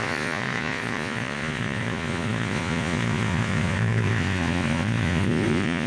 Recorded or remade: remade